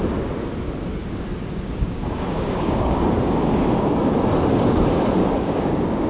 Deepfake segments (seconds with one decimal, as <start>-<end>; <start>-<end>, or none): 1.0-4.0; 5.2-6.1